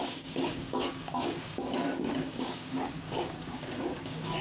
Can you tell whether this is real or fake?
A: fake